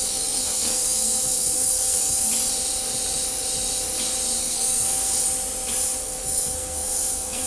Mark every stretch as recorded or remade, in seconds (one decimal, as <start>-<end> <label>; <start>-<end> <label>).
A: 0.0-2.3 remade; 2.3-4.4 recorded; 4.4-5.1 remade; 5.1-6.0 recorded; 6.0-7.5 remade